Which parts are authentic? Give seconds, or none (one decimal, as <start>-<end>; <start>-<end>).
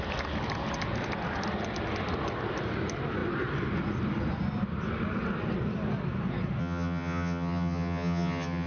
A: 0.0-6.6